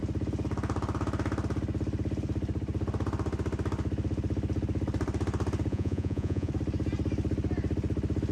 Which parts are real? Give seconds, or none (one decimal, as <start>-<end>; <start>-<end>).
0.0-5.7; 6.5-8.3